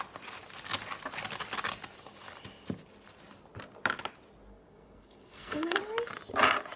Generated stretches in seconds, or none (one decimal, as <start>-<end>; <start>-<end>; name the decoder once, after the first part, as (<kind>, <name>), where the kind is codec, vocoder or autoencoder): 4.5-5.8 (codec, SNAC)